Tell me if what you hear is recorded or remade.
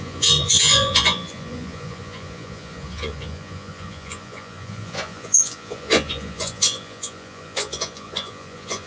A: remade